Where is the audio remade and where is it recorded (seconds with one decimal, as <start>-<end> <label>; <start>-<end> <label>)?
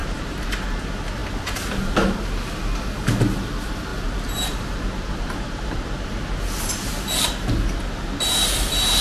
0.0-0.6 remade; 0.6-3.9 recorded; 3.9-5.8 remade; 5.8-9.0 recorded